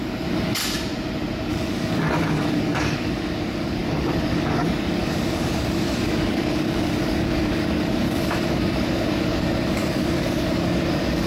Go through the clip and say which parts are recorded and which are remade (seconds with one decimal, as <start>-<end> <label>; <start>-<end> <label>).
0.0-0.6 remade; 0.6-1.5 recorded; 1.5-11.3 remade

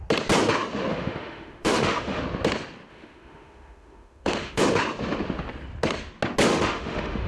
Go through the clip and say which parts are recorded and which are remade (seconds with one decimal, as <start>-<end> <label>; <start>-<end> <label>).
0.0-0.9 recorded; 0.9-2.2 remade; 2.2-2.9 recorded; 2.9-4.6 remade; 4.6-6.5 recorded; 6.5-7.3 remade

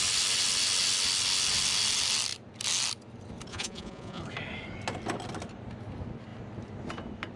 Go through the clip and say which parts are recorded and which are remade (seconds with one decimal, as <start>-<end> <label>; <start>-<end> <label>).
0.0-3.5 recorded; 3.5-4.2 remade; 4.2-7.4 recorded

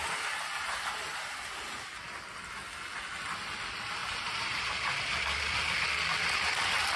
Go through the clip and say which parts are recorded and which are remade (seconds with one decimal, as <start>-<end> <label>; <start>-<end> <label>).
0.0-4.0 recorded; 4.0-5.5 remade; 5.5-7.0 recorded

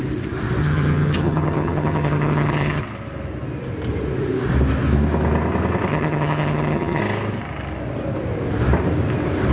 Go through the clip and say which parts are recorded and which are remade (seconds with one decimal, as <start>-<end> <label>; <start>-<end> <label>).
0.0-0.6 recorded; 0.6-2.8 remade; 2.8-5.9 recorded; 5.9-7.0 remade; 7.0-9.5 recorded

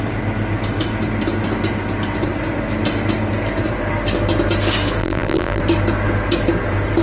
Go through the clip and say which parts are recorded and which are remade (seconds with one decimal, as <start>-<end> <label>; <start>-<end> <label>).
0.0-5.0 recorded; 5.0-5.6 remade; 5.6-7.0 recorded

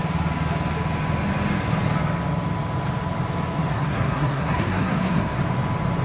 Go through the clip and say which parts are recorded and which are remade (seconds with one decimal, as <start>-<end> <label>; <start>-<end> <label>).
0.0-3.7 recorded; 3.7-5.4 remade; 5.4-6.0 recorded